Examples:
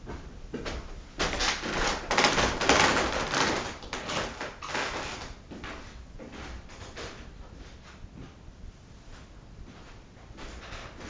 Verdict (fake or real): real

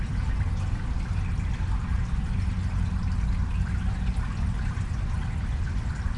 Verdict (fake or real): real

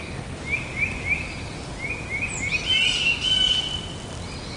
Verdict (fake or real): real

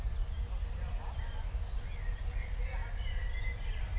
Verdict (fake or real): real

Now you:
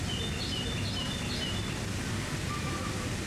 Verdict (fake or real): real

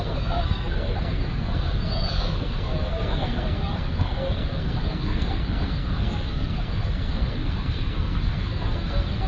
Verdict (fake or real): fake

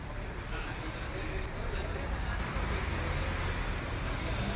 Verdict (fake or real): real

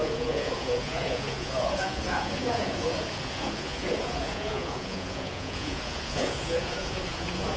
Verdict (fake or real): fake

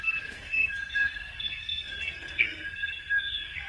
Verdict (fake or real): fake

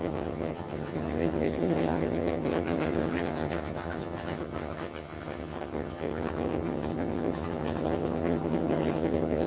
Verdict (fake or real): fake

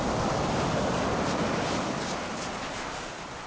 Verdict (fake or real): real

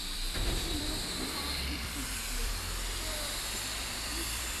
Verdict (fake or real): fake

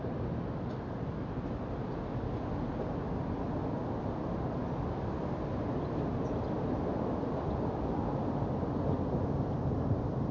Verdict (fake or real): real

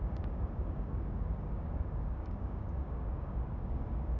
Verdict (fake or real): fake